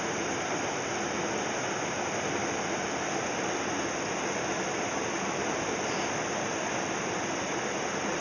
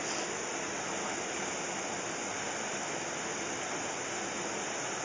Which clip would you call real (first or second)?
second